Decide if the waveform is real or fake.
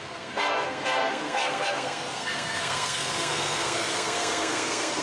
fake